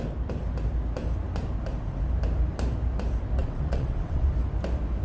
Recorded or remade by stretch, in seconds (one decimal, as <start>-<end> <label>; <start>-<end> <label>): 0.0-3.4 recorded; 3.4-4.3 remade; 4.3-5.0 recorded